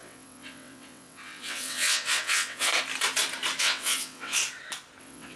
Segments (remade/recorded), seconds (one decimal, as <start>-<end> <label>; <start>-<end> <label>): 0.0-2.7 remade; 2.7-3.6 recorded; 3.6-4.4 remade; 4.4-5.0 recorded; 5.0-5.4 remade

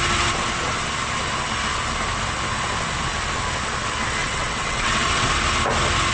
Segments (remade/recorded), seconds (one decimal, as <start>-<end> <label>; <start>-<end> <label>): 0.0-4.2 recorded; 4.2-5.3 remade; 5.3-6.1 recorded